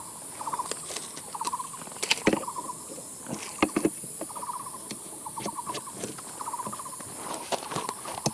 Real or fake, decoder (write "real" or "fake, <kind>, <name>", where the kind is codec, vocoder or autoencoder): real